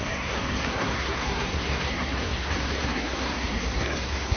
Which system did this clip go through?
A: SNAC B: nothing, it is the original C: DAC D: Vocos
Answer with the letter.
A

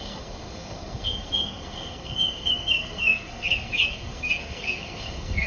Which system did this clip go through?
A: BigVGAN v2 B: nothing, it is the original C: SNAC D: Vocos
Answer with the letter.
C